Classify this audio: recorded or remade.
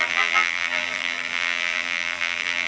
remade